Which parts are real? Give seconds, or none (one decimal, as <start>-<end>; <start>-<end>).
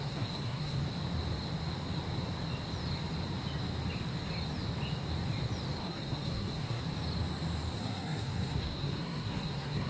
0.8-5.8; 6.8-7.8